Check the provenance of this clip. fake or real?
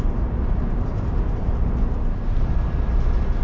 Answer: real